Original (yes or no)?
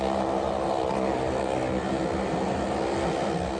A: yes